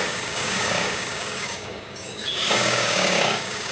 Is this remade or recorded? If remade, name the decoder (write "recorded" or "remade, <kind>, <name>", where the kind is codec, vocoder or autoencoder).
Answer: remade, codec, DAC